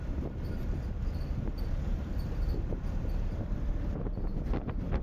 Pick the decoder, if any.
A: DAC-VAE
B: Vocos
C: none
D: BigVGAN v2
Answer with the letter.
D